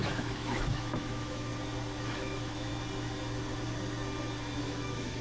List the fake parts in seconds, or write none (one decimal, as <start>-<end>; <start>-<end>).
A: 0.0-1.5; 2.0-2.7; 4.6-5.2

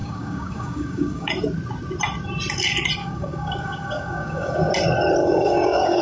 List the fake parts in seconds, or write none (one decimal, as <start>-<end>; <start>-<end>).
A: 0.0-1.3; 3.0-4.7; 5.2-6.0

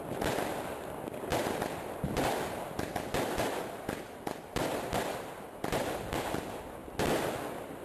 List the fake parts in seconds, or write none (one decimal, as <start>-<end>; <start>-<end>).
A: none

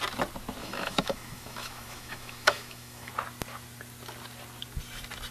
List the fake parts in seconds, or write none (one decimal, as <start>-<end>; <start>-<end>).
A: 0.6-3.1

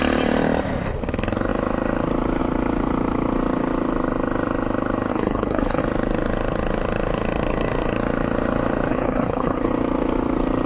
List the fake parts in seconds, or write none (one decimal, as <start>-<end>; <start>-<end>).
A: 5.1-5.8; 8.9-9.7

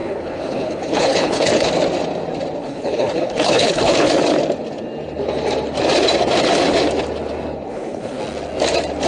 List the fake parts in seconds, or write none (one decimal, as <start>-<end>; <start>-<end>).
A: 0.0-1.7; 2.6-4.1; 7.7-8.2